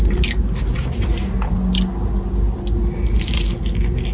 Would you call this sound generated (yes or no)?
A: no